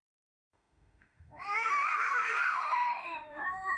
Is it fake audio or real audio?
fake